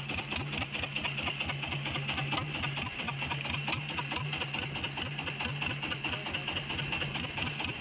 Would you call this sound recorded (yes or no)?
yes